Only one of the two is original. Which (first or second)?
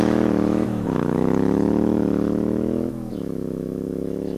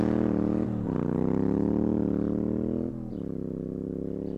second